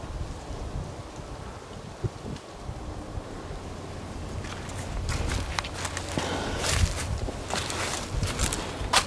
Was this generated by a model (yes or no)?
no